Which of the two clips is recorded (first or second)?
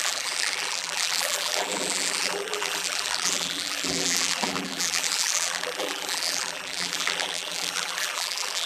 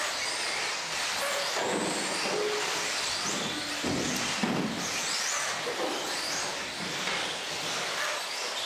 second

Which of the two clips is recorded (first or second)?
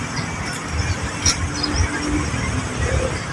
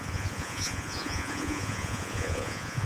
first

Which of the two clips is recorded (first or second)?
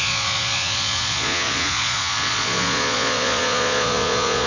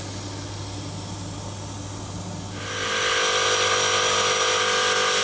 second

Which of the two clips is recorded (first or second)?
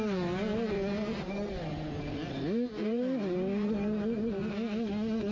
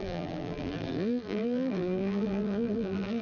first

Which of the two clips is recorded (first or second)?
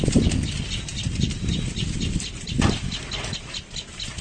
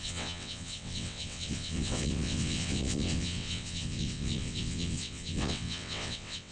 first